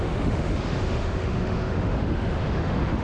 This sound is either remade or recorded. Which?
remade